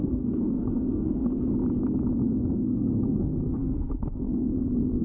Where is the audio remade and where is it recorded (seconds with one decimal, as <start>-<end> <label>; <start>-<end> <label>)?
0.0-1.5 remade; 1.5-2.2 recorded; 2.2-4.5 remade; 4.5-5.0 recorded